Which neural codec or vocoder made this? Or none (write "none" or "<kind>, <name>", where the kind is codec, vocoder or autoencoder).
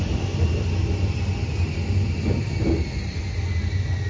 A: none